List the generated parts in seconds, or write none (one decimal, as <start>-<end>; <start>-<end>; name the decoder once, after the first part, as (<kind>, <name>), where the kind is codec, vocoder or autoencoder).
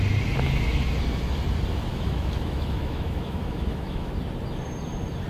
1.9-4.1 (autoencoder, DAC-VAE)